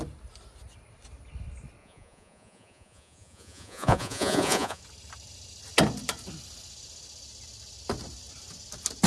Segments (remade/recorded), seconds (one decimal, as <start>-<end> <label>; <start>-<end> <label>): 0.0-1.8 recorded; 1.8-4.8 remade; 4.8-9.1 recorded

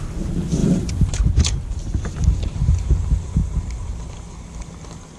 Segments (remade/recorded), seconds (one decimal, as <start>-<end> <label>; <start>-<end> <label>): 0.0-0.6 recorded; 0.6-2.9 remade; 2.9-5.2 recorded

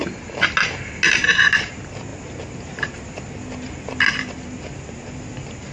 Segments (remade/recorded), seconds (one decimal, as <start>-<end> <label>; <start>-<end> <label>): 0.0-5.7 recorded

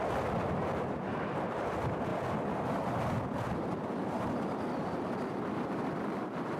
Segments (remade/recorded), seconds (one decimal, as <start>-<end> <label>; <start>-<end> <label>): 0.0-6.6 remade